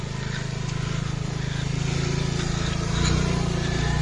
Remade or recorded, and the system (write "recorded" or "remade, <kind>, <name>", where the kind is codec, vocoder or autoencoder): recorded